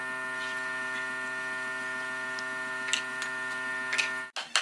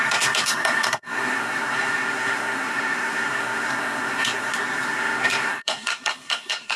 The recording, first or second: first